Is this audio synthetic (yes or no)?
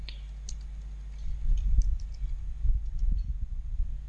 no